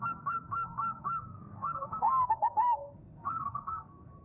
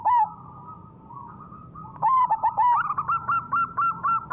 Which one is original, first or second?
second